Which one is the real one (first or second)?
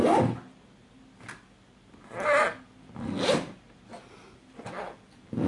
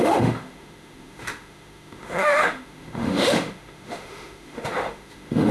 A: first